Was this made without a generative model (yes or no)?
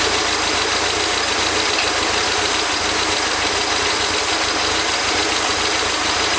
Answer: yes